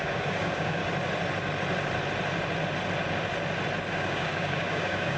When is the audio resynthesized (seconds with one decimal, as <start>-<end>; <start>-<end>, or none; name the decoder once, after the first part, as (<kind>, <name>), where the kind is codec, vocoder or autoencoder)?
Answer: 0.0-0.8 (codec, DAC); 3.9-5.2